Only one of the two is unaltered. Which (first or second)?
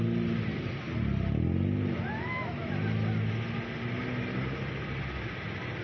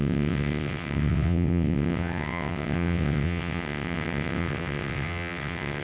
first